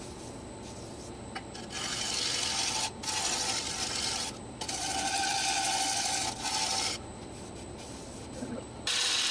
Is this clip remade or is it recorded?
recorded